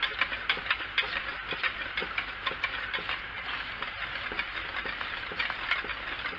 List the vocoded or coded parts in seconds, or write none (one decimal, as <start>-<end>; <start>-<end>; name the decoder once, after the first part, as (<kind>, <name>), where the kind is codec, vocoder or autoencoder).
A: none